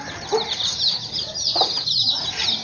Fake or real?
fake